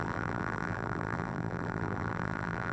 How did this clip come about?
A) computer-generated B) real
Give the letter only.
A